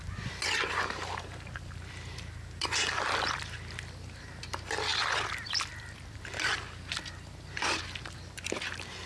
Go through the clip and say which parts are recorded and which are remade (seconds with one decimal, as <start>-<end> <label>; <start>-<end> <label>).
0.0-9.1 recorded